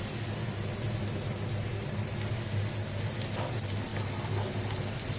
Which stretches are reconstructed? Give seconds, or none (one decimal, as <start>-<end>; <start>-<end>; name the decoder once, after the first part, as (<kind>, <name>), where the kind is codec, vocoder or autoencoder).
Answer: none